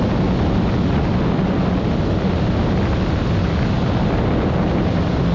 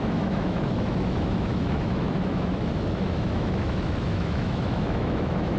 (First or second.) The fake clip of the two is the second